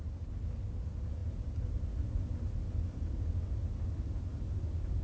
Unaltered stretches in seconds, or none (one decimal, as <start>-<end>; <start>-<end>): 0.0-5.0